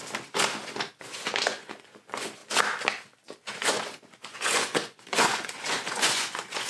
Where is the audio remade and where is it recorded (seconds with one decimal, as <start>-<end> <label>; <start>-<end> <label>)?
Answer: 0.0-1.0 recorded; 1.0-2.4 remade; 2.4-3.5 recorded; 3.5-6.7 remade